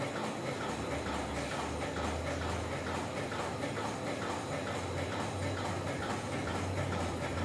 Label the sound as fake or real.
real